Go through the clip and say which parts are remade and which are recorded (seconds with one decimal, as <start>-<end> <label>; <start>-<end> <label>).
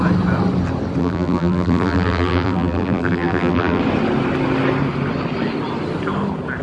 0.0-1.0 recorded; 1.0-3.8 remade; 3.8-6.6 recorded